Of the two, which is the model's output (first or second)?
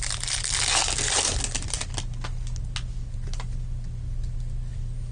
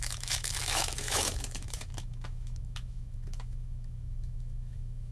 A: second